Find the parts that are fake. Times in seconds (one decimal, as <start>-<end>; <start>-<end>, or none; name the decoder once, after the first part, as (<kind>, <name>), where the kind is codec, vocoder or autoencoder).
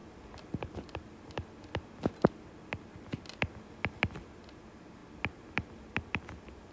none